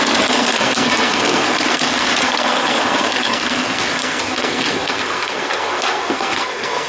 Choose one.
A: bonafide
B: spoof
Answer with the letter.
B